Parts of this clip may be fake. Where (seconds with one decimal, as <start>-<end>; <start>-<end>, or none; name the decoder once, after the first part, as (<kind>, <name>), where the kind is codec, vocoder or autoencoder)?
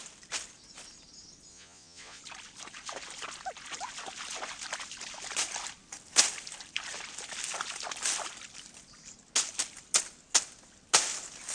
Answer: 1.5-2.2 (vocoder, Vocos)